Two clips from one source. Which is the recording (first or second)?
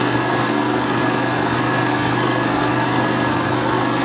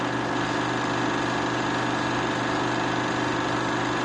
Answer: second